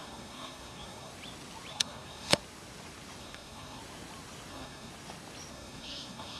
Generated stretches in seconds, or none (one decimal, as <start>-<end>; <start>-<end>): 0.0-1.1; 1.7-2.4; 3.2-3.8; 4.5-4.9; 5.5-6.4